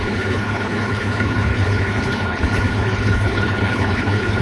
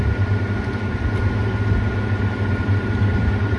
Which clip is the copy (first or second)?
first